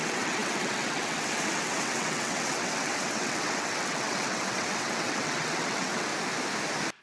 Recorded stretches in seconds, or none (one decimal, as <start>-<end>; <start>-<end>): 6.1-7.0